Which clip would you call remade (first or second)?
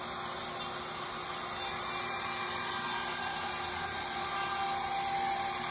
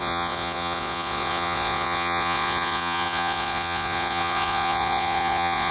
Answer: second